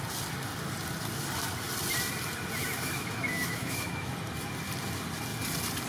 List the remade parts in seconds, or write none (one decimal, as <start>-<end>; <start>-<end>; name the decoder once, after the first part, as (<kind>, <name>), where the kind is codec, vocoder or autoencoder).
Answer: 2.6-4.1 (autoencoder, DAC-VAE)